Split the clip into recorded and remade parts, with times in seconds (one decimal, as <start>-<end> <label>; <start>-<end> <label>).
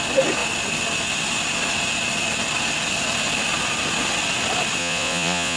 0.0-4.8 recorded; 4.8-5.6 remade